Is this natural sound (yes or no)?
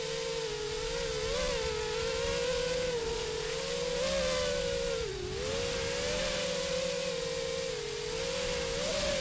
yes